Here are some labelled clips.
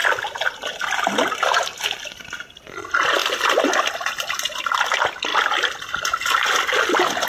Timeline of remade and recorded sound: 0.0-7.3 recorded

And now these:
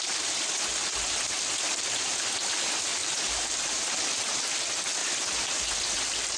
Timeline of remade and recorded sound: 0.0-3.0 recorded; 3.0-3.8 remade; 3.8-6.4 recorded

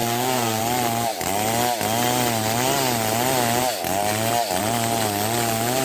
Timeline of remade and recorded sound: 0.0-0.6 remade; 0.6-5.8 recorded

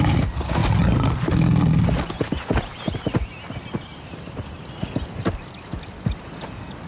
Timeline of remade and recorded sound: 0.0-6.9 recorded